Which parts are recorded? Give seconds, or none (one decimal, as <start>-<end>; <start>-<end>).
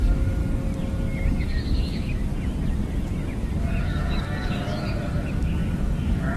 0.4-1.3; 2.3-3.8